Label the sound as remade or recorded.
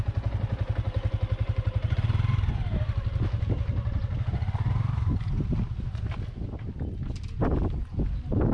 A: recorded